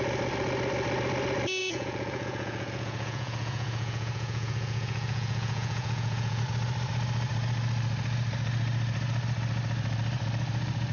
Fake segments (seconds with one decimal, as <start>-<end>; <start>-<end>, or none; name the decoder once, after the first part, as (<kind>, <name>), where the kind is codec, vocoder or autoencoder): 1.6-6.4 (vocoder, Vocos)